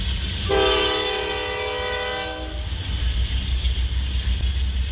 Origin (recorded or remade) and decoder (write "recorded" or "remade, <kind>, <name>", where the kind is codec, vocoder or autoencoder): recorded